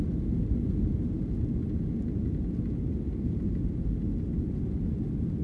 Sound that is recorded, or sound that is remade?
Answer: recorded